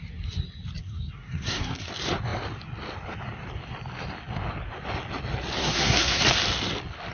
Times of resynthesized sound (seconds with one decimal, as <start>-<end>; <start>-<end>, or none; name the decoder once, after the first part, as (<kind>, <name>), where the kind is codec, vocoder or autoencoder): 0.8-1.9 (codec, SNAC); 5.6-6.2